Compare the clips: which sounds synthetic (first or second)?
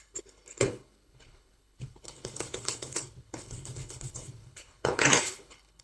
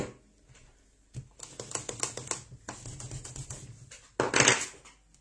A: first